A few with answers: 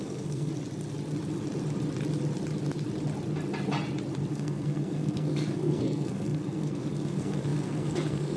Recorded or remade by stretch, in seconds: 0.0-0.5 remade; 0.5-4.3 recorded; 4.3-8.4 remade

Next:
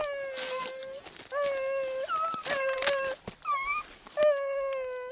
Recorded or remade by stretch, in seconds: 0.0-5.1 recorded

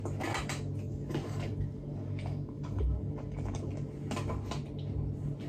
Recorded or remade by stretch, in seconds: 0.0-0.9 recorded; 0.9-3.7 remade; 3.7-5.5 recorded

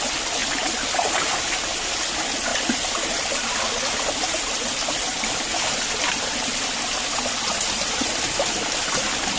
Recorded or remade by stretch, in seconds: 0.0-0.4 recorded; 0.4-2.0 remade; 2.0-9.4 recorded

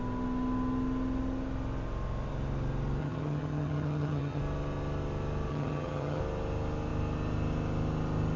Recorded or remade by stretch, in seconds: 0.0-3.0 recorded; 3.0-4.4 remade; 4.4-5.5 recorded; 5.5-6.2 remade; 6.2-8.4 recorded

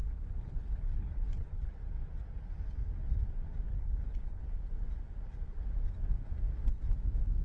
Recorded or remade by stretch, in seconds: 0.0-1.7 remade; 1.7-3.7 recorded; 3.7-4.4 remade; 4.4-7.4 recorded